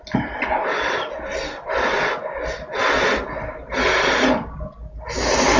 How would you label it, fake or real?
real